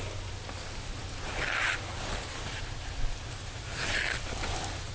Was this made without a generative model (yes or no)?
yes